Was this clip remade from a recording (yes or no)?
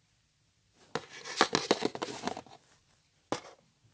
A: no